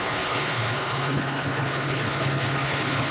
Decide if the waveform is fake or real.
fake